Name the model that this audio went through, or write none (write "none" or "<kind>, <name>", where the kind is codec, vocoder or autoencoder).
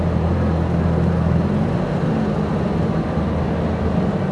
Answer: none